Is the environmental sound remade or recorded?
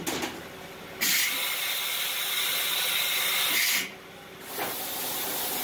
recorded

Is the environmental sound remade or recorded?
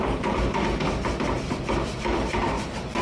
remade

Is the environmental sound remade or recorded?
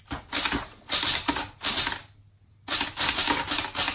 recorded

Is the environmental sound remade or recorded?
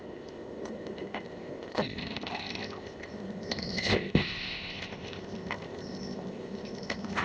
remade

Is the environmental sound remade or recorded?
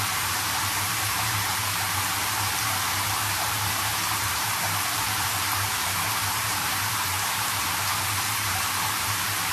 remade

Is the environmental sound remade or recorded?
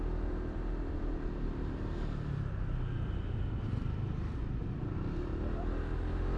recorded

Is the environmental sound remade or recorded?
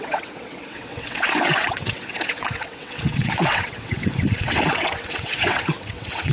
remade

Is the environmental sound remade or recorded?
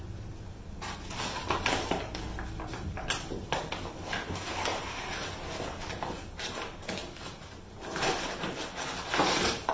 recorded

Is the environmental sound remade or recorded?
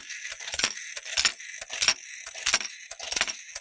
recorded